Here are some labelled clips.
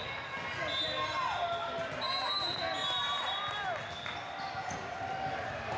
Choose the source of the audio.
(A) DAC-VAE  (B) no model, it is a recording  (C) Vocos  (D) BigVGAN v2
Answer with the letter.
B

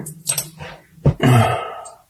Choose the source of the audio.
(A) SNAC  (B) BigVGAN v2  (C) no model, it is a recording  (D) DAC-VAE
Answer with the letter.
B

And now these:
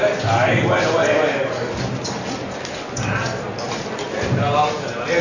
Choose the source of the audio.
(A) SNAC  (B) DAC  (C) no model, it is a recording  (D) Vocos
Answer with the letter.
C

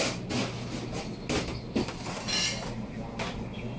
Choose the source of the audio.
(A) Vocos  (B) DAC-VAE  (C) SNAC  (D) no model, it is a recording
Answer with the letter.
D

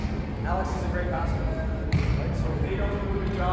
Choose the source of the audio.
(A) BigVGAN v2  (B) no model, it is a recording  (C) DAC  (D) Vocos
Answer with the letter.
B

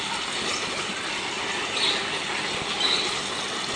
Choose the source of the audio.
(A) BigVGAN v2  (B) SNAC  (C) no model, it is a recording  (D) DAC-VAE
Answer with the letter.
C